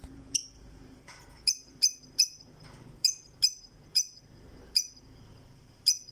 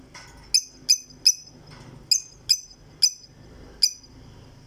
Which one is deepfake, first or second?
first